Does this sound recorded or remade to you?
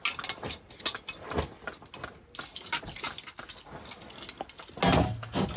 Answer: recorded